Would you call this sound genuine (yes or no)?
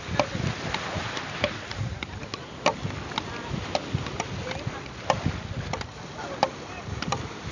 yes